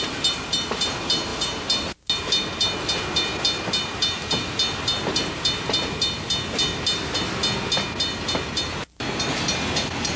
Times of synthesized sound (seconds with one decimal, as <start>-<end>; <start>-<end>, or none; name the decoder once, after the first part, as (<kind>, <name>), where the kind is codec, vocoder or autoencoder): none